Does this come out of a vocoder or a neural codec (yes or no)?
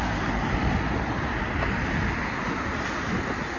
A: no